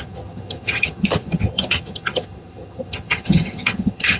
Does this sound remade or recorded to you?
remade